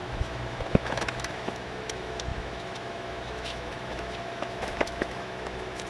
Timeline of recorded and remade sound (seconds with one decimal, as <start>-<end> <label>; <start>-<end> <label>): 0.0-5.9 remade